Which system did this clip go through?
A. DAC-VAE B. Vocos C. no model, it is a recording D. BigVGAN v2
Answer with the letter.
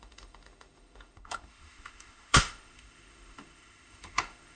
A